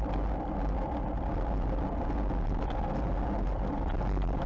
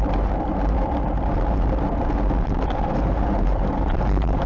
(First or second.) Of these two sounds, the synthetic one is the second